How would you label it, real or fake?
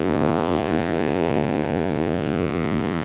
fake